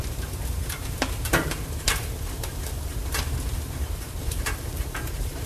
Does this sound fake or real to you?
fake